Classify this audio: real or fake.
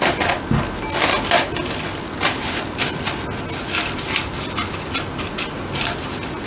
real